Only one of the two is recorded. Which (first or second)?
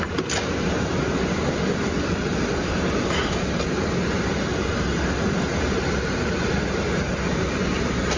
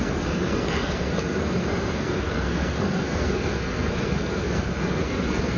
first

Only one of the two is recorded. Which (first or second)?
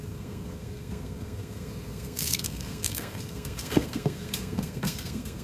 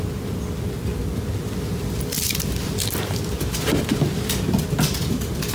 second